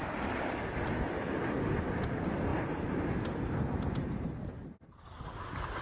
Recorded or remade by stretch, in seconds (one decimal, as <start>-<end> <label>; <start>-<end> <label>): 0.0-2.5 recorded; 2.5-4.3 remade; 4.3-5.8 recorded